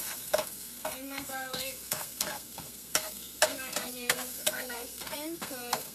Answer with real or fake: fake